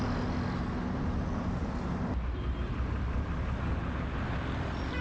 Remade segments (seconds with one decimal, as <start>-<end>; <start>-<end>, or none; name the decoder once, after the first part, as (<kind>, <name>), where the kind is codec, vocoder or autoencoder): 1.6-2.7 (vocoder, BigVGAN v2)